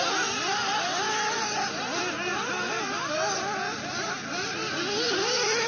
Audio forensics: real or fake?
real